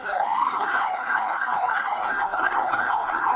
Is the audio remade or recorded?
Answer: remade